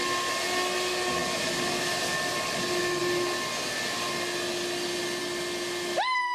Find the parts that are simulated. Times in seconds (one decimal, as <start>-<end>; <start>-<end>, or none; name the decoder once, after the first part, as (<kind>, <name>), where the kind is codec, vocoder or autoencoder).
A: none